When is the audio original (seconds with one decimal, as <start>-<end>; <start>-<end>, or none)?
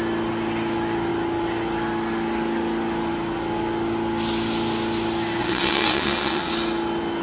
0.0-5.4; 6.5-7.2